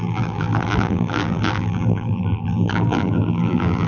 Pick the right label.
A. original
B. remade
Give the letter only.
B